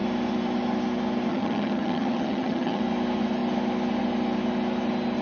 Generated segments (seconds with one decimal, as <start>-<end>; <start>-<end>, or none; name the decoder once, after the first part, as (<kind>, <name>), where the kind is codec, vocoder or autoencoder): 1.3-2.8 (vocoder, HiFi-GAN)